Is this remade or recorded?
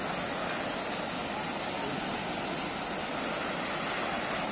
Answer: recorded